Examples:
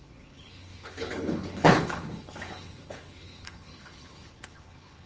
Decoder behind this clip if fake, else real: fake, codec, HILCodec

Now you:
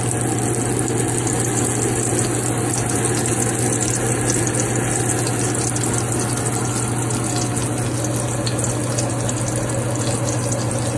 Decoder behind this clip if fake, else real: real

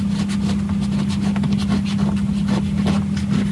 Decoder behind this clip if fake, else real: real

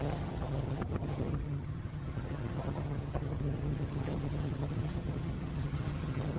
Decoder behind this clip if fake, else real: fake, vocoder, HiFi-GAN